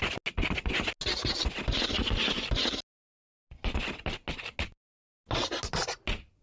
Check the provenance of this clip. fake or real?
real